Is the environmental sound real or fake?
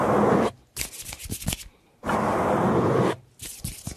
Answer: real